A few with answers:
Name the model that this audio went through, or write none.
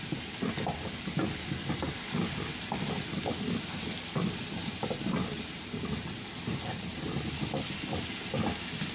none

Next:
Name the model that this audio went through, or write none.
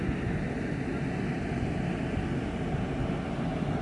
none